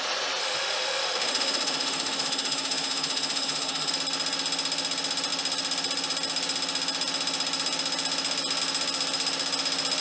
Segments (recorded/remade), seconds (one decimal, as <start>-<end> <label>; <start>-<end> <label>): 0.0-0.4 recorded; 0.4-3.9 remade; 3.9-10.0 recorded